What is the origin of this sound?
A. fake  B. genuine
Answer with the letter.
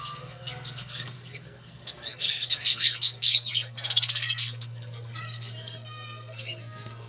A